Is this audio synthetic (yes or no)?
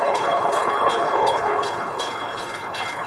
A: yes